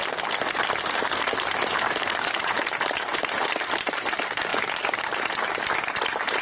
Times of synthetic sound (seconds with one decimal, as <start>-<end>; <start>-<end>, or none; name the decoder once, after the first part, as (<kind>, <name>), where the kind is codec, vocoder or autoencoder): 0.8-6.4 (vocoder, BigVGAN v2)

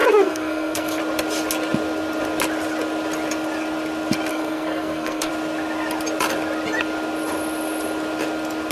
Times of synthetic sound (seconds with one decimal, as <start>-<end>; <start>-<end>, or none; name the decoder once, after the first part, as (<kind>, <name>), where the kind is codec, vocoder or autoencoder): 0.0-1.0 (codec, SNAC); 4.3-5.3

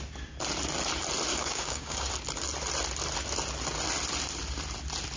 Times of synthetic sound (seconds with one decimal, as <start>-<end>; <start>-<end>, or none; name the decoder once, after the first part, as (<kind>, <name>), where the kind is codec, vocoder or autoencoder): 1.3-2.1 (codec, DAC)

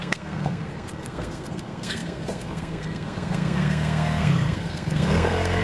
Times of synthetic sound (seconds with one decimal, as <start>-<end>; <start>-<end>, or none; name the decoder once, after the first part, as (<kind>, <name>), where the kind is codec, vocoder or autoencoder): 0.0-5.6 (codec, SNAC)